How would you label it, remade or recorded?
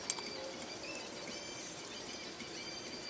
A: recorded